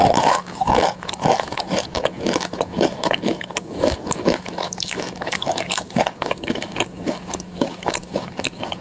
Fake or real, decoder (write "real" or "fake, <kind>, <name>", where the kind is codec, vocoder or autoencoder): fake, codec, DAC